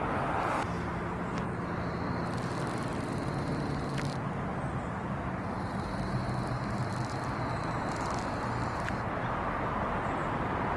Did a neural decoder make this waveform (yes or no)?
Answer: no